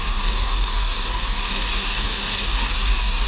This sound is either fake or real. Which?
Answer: fake